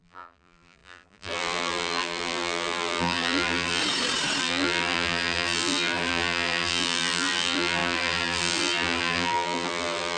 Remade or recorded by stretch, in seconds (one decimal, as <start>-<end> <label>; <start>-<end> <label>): 0.0-3.8 remade; 3.8-4.4 recorded; 4.4-10.2 remade